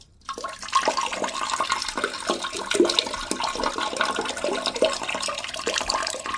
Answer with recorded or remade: recorded